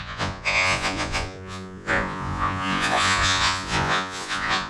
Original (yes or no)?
no